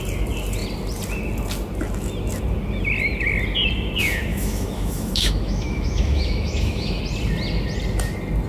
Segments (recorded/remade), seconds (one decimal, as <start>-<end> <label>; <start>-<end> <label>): 0.0-4.3 recorded; 4.3-7.0 remade; 7.0-8.5 recorded